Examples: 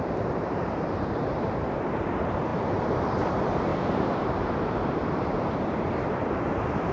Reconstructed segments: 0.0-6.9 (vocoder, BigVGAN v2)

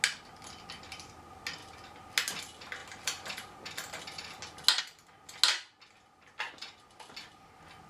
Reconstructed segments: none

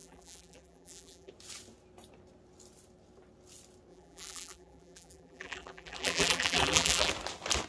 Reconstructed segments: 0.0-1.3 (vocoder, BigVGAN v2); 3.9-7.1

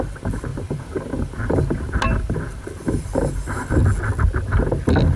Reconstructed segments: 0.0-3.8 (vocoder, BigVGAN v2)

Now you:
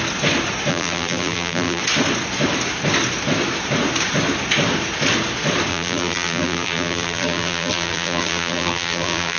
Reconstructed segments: 0.7-1.8 (vocoder, BigVGAN v2); 5.7-9.4

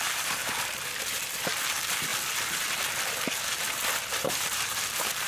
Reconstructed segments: 0.0-0.4 (vocoder, BigVGAN v2); 1.0-2.1; 4.2-5.3